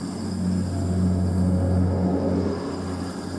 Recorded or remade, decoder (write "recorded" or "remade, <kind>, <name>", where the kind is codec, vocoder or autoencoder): recorded